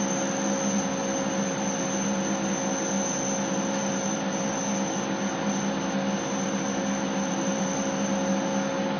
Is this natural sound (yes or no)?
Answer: yes